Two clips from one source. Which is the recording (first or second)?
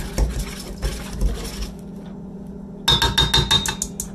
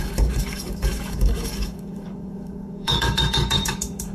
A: first